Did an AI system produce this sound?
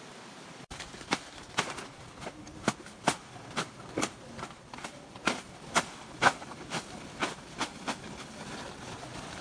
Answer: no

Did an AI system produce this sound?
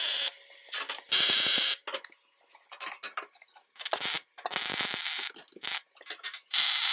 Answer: no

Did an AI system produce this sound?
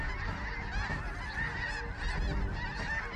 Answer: no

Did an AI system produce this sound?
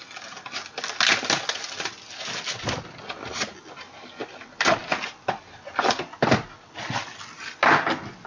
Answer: no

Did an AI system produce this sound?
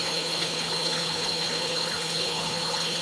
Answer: yes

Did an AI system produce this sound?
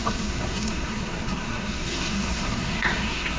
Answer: yes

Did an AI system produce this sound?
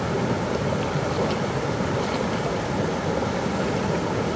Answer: no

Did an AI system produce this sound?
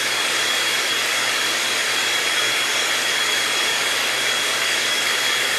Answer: yes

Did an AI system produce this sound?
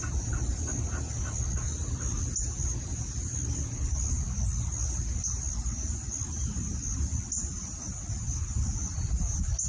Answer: no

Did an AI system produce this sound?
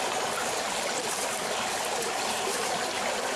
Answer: no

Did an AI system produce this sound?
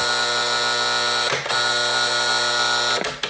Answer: no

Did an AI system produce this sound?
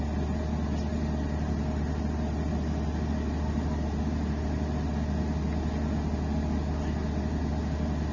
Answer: no